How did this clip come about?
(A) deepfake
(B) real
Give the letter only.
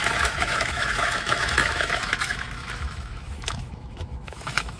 A